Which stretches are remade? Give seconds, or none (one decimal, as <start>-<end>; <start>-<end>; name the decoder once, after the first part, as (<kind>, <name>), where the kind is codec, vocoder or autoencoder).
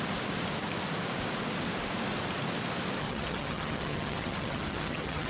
3.0-5.3 (vocoder, HiFi-GAN)